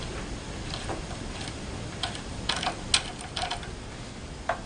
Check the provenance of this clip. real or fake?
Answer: real